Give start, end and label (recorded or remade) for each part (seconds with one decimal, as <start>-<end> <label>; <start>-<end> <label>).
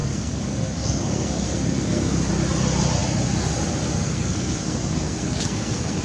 0.0-2.3 remade; 2.3-3.9 recorded; 3.9-6.0 remade